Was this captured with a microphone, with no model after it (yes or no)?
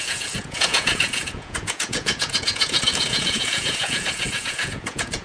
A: no